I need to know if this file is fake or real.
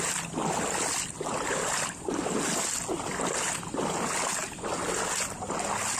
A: real